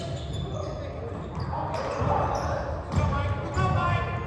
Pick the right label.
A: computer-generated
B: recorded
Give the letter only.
B